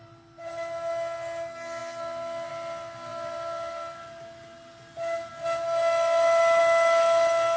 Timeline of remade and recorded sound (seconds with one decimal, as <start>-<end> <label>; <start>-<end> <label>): 0.0-7.6 recorded